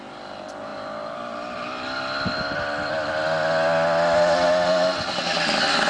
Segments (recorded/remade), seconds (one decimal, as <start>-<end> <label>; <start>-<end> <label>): 0.0-5.9 recorded